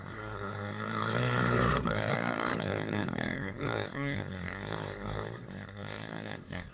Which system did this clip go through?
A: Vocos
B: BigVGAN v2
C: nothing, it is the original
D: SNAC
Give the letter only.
D